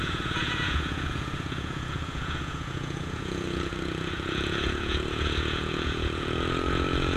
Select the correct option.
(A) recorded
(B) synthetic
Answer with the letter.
B